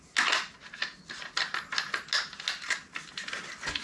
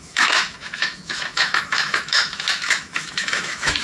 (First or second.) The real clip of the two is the first